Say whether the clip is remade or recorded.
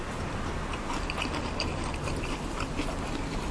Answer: recorded